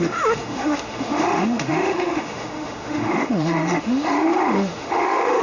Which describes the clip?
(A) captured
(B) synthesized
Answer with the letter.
B